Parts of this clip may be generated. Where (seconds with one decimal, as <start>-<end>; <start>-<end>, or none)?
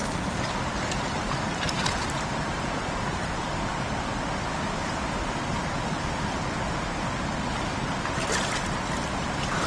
0.0-3.7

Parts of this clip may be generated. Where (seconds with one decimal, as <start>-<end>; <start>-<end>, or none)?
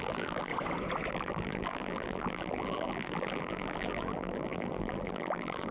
0.0-0.5; 1.1-5.7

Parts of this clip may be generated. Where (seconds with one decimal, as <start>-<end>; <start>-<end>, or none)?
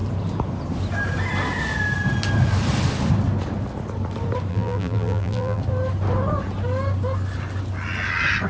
4.5-5.6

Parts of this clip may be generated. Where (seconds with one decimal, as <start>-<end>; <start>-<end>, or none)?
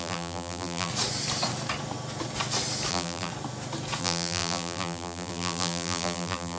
0.0-0.9; 2.9-3.3; 4.0-6.6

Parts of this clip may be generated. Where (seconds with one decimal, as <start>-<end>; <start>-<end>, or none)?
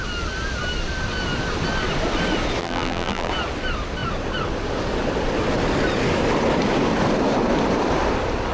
2.6-3.3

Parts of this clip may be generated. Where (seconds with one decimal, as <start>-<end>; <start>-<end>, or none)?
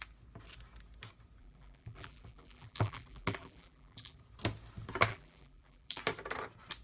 1.4-4.2; 5.1-6.0